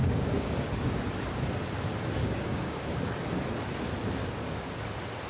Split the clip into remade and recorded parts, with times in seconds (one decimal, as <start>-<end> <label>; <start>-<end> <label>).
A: 0.0-1.0 remade; 1.0-2.2 recorded; 2.2-3.0 remade; 3.0-4.2 recorded; 4.2-4.8 remade; 4.8-5.3 recorded